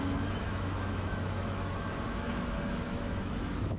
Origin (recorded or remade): remade